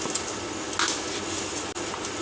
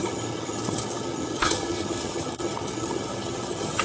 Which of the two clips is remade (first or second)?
second